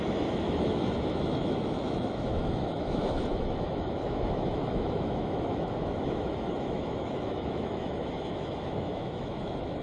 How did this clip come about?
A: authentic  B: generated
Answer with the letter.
B